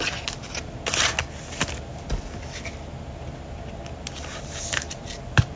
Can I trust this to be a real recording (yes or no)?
yes